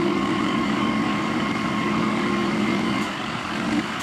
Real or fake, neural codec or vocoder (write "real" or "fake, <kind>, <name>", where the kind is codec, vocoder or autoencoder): fake, codec, DAC